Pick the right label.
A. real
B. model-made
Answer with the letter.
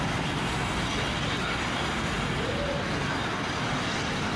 A